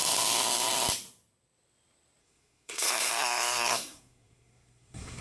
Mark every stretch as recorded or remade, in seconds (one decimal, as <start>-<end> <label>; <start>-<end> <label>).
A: 0.0-2.2 recorded; 2.2-5.2 remade